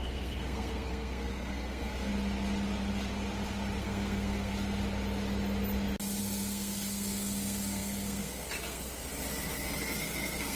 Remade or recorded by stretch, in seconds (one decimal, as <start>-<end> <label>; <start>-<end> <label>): 0.0-2.1 remade; 2.1-3.8 recorded; 3.8-4.5 remade; 4.5-6.2 recorded; 6.2-9.1 remade; 9.1-10.0 recorded; 10.0-10.6 remade